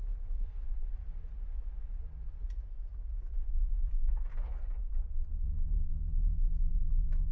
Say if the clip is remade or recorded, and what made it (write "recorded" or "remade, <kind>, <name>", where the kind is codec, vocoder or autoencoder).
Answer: recorded